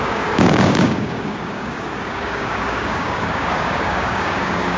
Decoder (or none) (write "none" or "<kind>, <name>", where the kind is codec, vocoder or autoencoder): codec, DAC